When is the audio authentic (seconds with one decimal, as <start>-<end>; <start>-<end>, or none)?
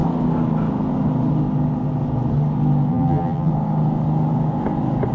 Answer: 0.0-2.9; 3.5-5.1